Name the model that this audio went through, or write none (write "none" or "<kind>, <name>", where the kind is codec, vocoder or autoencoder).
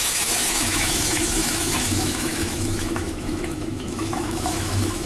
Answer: autoencoder, DAC-VAE